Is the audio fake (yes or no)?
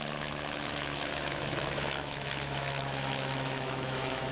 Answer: yes